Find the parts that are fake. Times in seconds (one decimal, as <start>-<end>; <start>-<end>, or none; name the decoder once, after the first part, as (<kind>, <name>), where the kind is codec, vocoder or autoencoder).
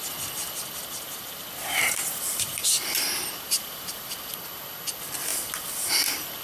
0.4-4.2 (vocoder, BigVGAN v2)